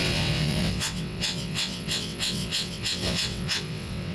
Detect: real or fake fake